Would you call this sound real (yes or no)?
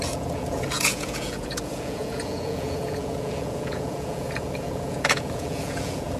no